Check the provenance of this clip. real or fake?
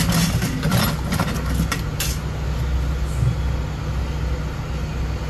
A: real